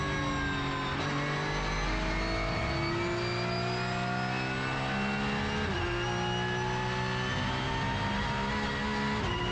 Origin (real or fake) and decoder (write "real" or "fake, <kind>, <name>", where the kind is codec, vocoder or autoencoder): real